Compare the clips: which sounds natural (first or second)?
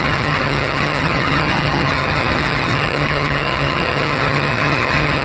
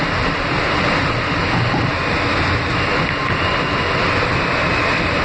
second